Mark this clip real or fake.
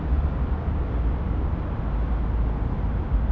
real